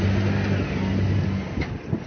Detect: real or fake real